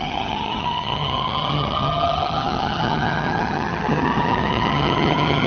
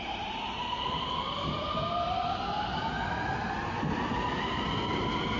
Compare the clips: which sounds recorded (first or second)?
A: second